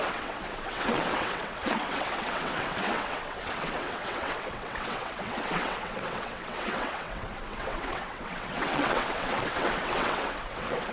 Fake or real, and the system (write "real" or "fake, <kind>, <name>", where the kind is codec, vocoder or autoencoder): fake, vocoder, WaveNeXt